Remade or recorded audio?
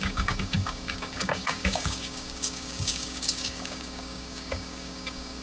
remade